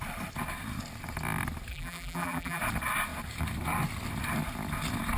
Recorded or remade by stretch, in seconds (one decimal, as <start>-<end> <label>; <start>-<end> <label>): 0.0-1.7 recorded; 1.7-2.6 remade; 2.6-5.2 recorded